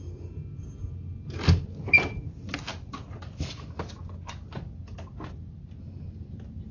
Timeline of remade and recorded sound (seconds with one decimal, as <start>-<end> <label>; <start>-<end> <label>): 0.0-6.7 recorded